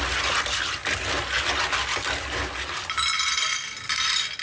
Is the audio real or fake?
real